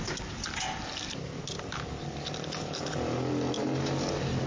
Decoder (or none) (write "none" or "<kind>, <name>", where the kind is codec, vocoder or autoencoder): none